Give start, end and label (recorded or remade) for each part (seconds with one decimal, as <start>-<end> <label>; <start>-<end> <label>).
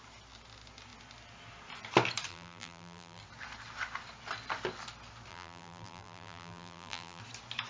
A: 0.0-2.3 recorded; 2.3-3.2 remade; 3.2-5.3 recorded; 5.3-7.2 remade; 7.2-7.7 recorded